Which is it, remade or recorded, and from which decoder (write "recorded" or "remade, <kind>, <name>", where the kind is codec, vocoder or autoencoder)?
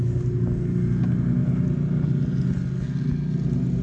recorded